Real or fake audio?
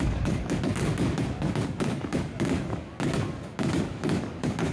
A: fake